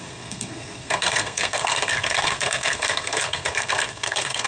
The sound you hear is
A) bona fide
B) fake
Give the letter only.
B